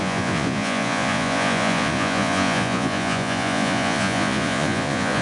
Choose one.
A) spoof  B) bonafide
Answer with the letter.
A